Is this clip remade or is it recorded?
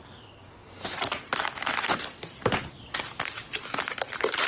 recorded